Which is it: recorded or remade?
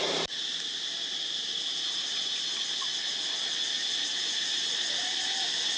recorded